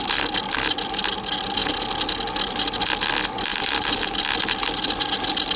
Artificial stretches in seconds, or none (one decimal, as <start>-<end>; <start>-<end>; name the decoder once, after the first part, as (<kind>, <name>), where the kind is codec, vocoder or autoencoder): 3.5-4.2 (vocoder, BigVGAN v2)